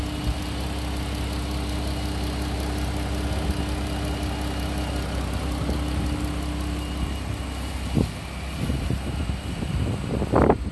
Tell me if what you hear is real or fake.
real